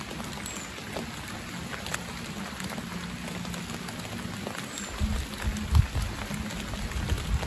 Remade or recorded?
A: recorded